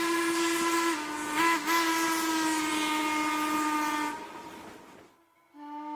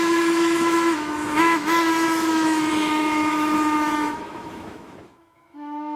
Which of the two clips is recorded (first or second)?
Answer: first